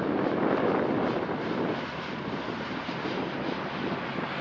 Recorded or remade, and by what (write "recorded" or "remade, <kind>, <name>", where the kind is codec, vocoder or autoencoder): recorded